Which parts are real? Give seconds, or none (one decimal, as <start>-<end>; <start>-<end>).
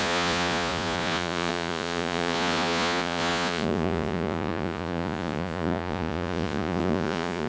none